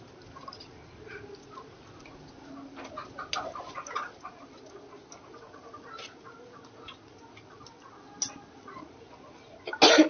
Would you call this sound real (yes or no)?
yes